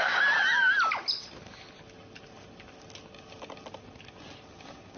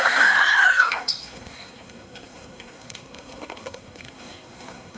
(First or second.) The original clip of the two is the first